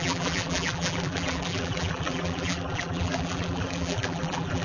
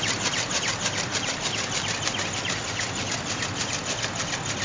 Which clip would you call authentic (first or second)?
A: second